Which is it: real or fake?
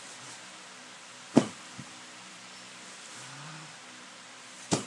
fake